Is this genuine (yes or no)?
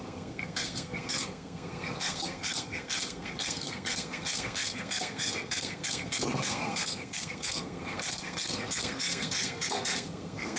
no